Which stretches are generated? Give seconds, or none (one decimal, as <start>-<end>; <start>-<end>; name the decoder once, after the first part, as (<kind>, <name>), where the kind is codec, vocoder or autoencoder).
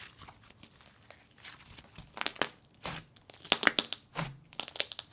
none